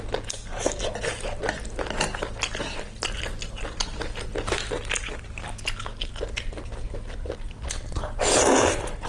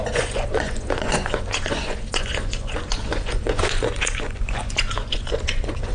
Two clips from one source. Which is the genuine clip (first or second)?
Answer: first